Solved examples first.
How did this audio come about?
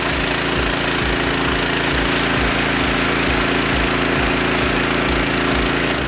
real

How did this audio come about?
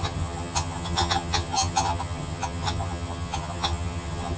fake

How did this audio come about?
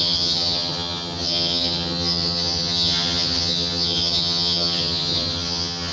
fake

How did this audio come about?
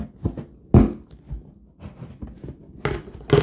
real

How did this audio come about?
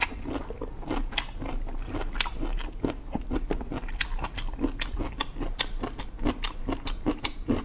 real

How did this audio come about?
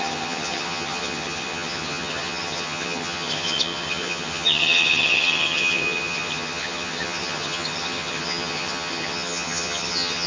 fake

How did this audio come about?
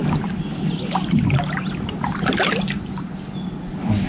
real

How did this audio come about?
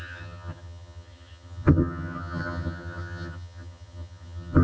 fake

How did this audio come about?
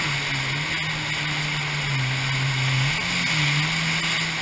real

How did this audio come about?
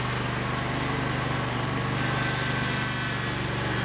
real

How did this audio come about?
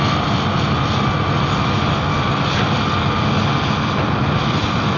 real